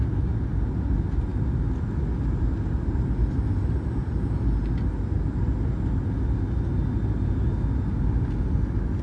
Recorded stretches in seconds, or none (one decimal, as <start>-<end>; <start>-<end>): 0.0-9.0